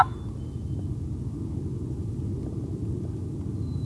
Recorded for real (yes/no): yes